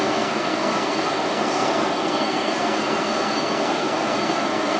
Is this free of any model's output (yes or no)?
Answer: no